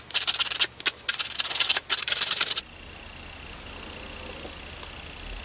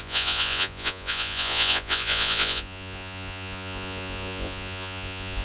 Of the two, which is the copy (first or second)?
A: second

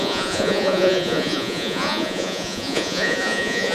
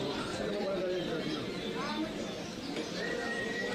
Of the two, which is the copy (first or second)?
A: first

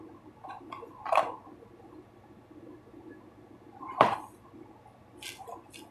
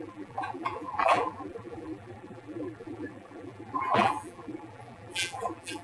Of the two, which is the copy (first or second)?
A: second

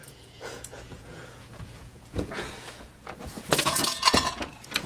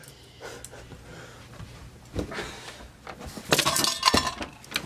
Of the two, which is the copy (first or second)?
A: first